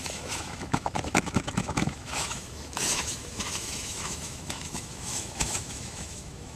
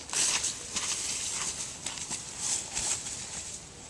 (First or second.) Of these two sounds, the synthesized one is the first